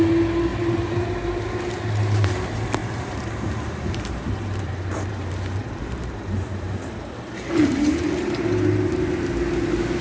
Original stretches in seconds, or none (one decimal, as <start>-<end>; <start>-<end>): 0.0-0.5; 1.4-2.8; 7.3-10.0